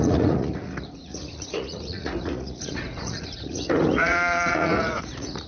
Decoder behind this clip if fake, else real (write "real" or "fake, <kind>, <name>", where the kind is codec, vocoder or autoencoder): fake, vocoder, Vocos